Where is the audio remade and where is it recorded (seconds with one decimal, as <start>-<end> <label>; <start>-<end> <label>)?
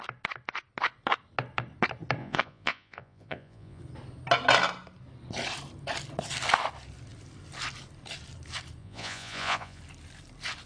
0.0-2.2 recorded; 2.2-3.8 remade; 3.8-8.8 recorded; 8.8-9.8 remade; 9.8-10.7 recorded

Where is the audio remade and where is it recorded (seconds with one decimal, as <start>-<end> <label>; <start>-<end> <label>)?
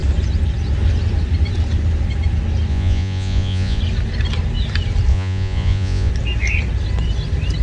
0.0-2.7 recorded; 2.7-3.8 remade; 3.8-5.1 recorded; 5.1-6.1 remade; 6.1-7.6 recorded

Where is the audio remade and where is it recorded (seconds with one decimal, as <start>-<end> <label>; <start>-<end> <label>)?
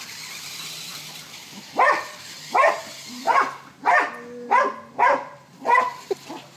0.0-6.6 recorded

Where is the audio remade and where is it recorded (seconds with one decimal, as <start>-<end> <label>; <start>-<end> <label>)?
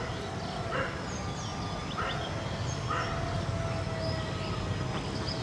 0.0-5.4 recorded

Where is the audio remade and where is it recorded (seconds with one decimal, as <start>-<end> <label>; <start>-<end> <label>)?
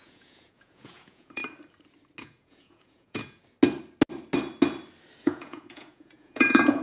0.0-1.4 remade; 1.4-2.2 recorded; 2.2-3.4 remade; 3.4-5.2 recorded; 5.2-6.8 remade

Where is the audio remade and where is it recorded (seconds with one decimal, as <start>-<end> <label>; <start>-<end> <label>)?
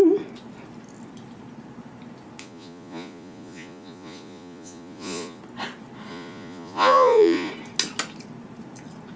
0.0-2.4 recorded; 2.4-5.4 remade; 5.4-6.1 recorded; 6.1-7.5 remade; 7.5-9.2 recorded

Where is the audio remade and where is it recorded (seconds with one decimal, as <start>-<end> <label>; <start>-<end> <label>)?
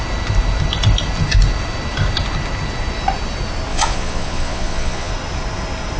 0.0-3.7 recorded; 3.7-5.1 remade; 5.1-6.0 recorded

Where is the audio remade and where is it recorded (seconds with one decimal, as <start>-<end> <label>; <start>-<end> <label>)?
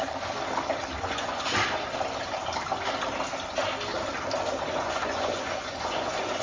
0.0-1.0 recorded; 1.0-1.5 remade; 1.5-4.7 recorded; 4.7-6.4 remade